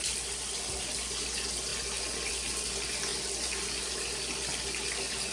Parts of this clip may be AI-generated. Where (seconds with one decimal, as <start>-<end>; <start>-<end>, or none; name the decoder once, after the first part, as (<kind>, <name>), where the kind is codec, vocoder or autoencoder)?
none